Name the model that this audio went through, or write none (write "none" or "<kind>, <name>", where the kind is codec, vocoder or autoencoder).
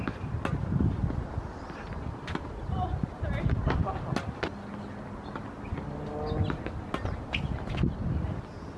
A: none